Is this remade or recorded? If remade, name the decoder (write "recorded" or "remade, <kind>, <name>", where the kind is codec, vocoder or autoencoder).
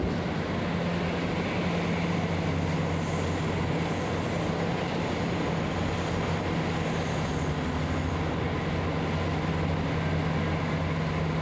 recorded